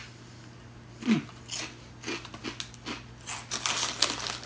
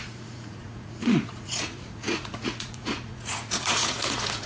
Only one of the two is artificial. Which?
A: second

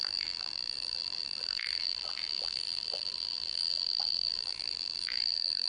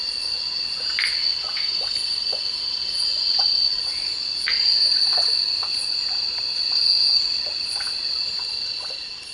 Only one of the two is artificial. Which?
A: first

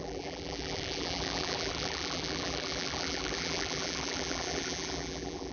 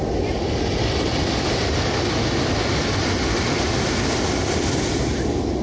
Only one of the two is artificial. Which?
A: first